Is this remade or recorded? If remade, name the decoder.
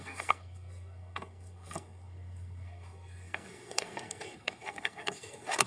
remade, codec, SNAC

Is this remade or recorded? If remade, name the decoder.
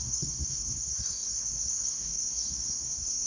remade, codec, SNAC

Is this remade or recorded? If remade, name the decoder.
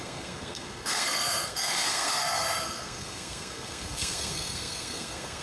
remade, codec, SNAC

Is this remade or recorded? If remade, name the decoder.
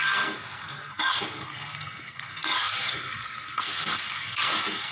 remade, codec, SNAC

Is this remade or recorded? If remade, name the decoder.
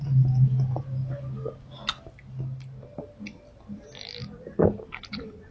recorded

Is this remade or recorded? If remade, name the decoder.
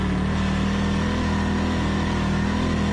recorded